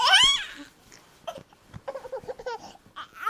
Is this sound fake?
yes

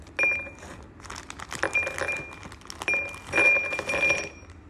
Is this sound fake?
no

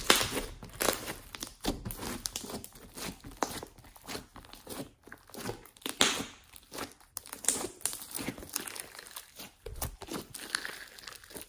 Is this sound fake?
no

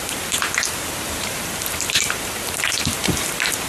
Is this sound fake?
yes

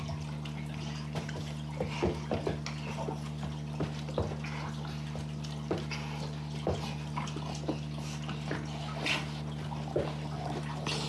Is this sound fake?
no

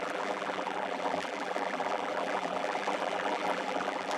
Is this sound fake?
yes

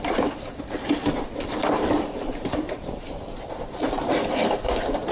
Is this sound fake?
yes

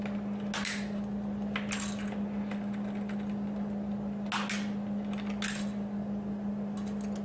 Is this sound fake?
no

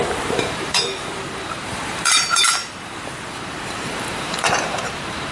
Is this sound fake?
yes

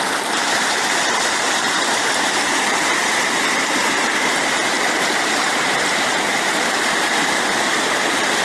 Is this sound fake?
yes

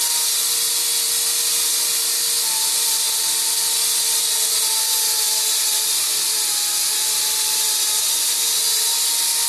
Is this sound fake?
no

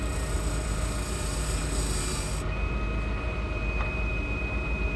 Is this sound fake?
yes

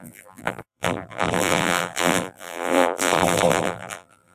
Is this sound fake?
yes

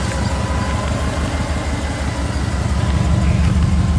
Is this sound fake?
no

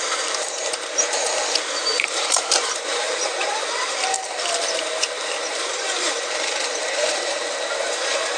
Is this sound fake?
yes